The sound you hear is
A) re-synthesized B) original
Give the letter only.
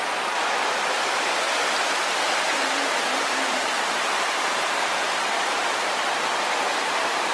B